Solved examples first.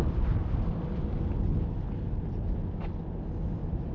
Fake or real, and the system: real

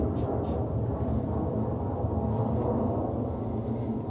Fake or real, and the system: real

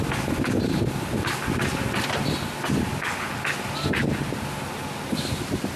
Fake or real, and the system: real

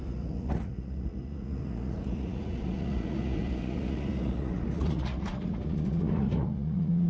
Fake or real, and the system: fake, vocoder, Vocos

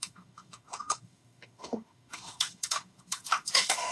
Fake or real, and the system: fake, autoencoder, DAC-VAE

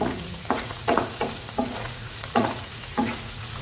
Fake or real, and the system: fake, vocoder, Vocos